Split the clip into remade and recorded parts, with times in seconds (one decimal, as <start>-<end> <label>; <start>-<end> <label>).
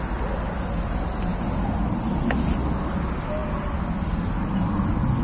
0.0-5.2 recorded